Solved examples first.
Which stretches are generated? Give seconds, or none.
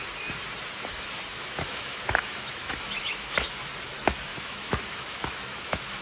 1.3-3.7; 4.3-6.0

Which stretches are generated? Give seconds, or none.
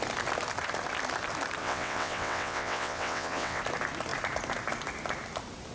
1.6-3.6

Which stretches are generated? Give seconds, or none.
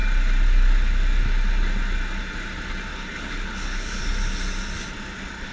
2.9-4.0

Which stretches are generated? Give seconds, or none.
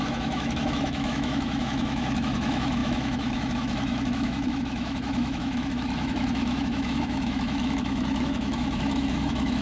0.0-9.6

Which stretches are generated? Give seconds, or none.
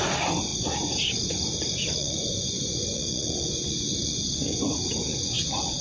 0.0-5.8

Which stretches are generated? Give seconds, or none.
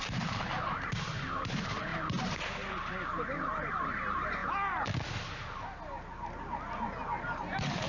0.0-1.9; 3.7-4.4; 7.4-7.9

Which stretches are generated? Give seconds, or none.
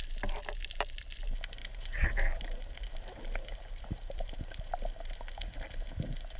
1.6-4.7